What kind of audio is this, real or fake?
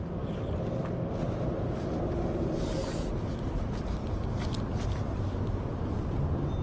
real